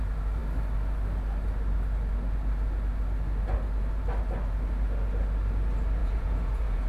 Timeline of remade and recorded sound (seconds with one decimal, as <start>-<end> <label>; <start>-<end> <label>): 0.0-6.0 recorded; 6.0-6.9 remade